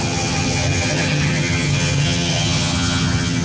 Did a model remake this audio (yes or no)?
yes